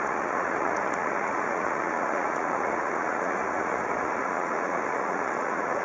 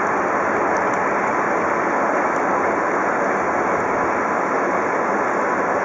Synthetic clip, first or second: first